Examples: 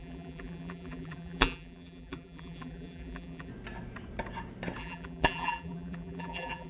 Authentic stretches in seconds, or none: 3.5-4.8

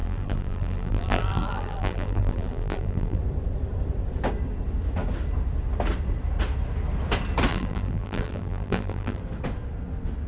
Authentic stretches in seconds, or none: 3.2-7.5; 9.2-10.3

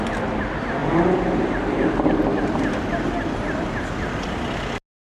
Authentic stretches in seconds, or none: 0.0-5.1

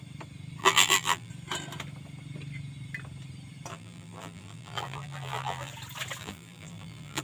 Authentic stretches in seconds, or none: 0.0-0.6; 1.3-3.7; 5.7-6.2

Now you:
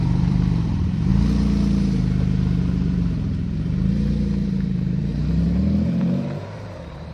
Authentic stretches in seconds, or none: 1.1-2.6

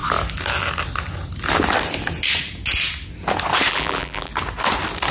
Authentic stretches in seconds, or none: 0.0-3.7; 4.3-5.1

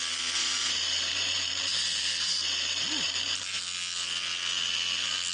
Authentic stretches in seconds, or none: 0.0-0.4; 3.6-5.3